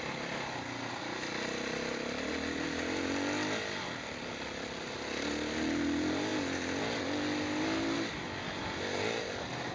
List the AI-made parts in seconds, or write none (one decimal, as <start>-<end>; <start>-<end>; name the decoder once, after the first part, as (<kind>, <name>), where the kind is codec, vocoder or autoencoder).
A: none